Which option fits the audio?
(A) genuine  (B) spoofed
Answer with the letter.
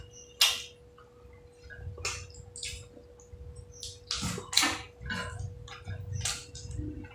A